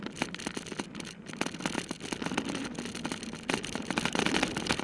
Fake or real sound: real